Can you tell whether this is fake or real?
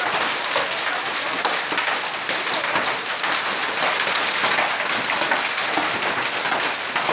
real